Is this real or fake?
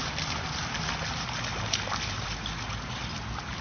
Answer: real